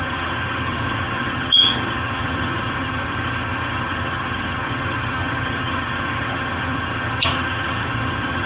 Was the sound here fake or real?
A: fake